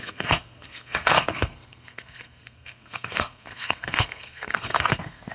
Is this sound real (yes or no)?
no